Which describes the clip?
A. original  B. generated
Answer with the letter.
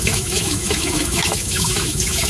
B